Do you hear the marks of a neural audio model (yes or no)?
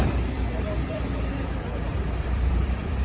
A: yes